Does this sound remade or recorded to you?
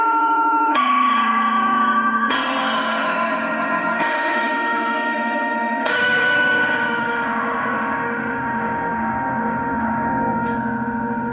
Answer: remade